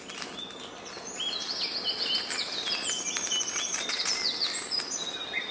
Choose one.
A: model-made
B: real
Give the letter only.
B